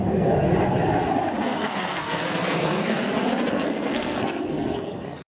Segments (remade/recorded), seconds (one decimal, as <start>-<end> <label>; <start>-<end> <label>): 0.0-0.5 remade; 0.5-1.4 recorded; 1.4-3.0 remade; 3.0-3.5 recorded; 3.5-5.3 remade